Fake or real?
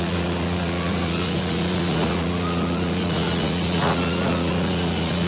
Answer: fake